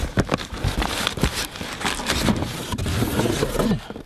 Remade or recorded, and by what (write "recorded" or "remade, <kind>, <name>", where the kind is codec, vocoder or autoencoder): recorded